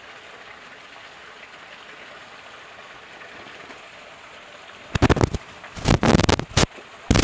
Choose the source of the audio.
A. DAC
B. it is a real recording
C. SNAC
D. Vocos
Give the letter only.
B